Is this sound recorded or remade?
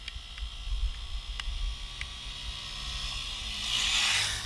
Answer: recorded